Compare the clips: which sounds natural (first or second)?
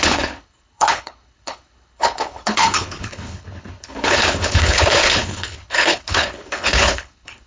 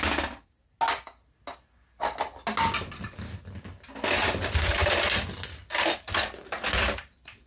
second